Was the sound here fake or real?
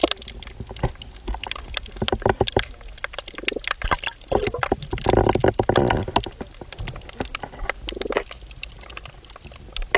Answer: real